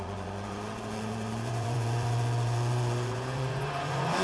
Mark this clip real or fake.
fake